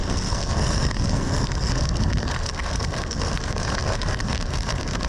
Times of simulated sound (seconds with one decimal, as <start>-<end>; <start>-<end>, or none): 0.0-5.1